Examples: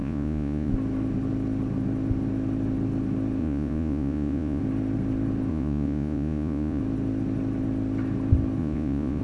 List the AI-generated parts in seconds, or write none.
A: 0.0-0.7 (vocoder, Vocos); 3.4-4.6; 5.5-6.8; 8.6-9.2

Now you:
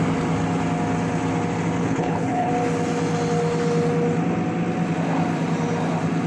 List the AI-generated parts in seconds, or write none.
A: 1.8-2.5 (codec, HILCodec)

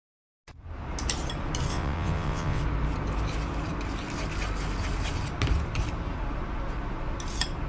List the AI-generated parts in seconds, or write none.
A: 1.7-2.6 (vocoder, WaveNeXt)

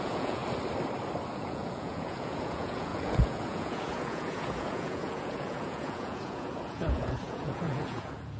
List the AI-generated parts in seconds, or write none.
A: 0.0-0.4 (vocoder, Vocos); 1.3-8.4